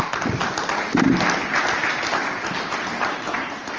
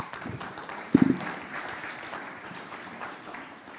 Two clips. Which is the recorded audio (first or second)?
first